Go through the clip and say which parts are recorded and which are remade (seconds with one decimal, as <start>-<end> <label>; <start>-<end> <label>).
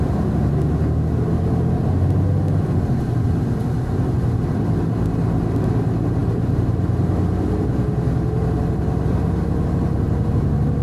0.0-10.8 recorded